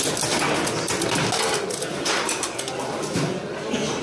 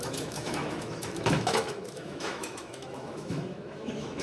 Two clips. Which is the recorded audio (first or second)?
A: first